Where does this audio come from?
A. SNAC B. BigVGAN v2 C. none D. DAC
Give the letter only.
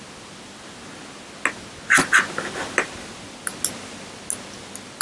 C